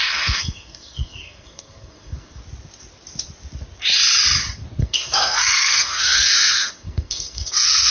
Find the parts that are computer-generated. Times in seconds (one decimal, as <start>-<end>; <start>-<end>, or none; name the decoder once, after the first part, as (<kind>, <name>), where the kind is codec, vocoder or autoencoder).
0.0-2.4 (codec, SNAC); 4.8-7.9